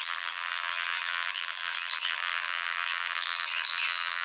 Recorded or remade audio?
remade